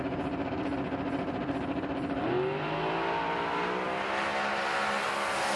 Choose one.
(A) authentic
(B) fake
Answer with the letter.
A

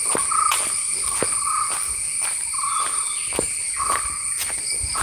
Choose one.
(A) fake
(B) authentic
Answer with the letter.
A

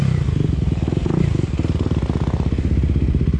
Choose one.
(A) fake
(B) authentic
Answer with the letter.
B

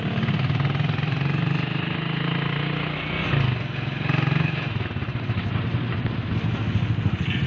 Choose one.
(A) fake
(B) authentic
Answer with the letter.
B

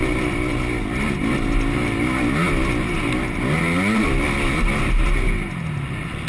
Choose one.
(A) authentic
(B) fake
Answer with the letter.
A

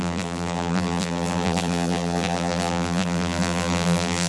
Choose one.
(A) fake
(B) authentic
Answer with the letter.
A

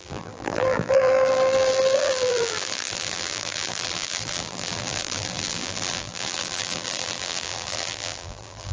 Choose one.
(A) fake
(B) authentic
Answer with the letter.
A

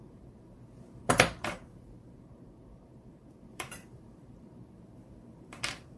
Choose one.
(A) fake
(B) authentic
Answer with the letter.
A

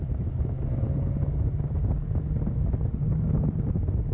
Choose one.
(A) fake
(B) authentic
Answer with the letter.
B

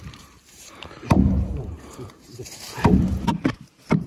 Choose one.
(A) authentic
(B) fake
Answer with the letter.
B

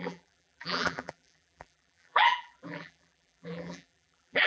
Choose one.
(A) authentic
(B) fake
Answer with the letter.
B